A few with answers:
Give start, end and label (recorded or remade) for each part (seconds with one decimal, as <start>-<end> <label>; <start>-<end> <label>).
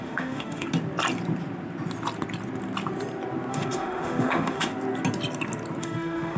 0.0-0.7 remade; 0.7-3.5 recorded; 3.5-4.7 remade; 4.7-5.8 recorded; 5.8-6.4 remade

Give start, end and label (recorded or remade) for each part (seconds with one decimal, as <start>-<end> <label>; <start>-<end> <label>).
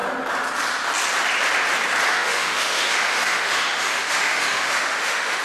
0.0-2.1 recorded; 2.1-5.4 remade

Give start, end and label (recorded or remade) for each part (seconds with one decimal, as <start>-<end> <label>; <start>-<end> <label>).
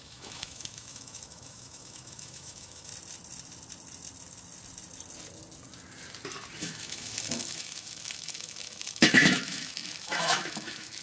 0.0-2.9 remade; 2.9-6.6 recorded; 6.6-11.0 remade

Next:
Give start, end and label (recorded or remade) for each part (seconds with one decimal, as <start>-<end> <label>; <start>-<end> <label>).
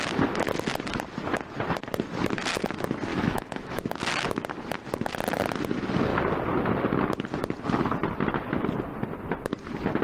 0.0-3.1 recorded; 3.1-4.0 remade; 4.0-10.0 recorded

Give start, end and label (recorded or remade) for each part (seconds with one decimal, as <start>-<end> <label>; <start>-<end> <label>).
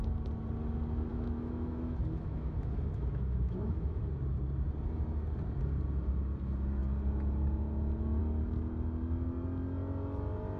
0.0-1.1 recorded; 1.1-4.0 remade; 4.0-10.6 recorded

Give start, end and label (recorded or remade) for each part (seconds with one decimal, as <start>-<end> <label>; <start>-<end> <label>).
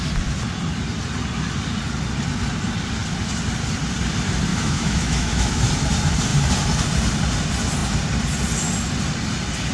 0.0-4.5 recorded; 4.5-5.6 remade; 5.6-9.7 recorded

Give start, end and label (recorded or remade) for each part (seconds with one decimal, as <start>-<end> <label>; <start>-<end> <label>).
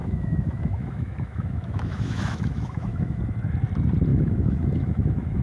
0.0-3.2 remade; 3.2-4.1 recorded; 4.1-5.4 remade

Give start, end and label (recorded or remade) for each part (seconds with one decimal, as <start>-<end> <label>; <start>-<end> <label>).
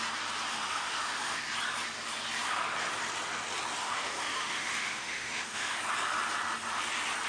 0.0-0.5 recorded; 0.5-1.4 remade; 1.4-3.8 recorded; 3.8-5.8 remade; 5.8-7.3 recorded